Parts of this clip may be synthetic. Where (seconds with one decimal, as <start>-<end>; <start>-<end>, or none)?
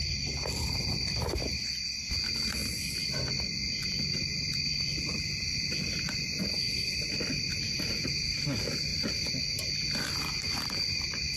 none